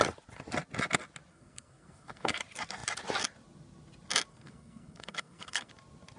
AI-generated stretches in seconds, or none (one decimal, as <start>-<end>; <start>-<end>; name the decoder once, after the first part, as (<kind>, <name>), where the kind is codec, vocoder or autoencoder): 1.3-2.4 (codec, SNAC); 4.3-5.7